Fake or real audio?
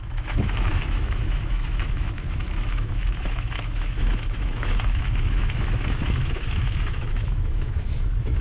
fake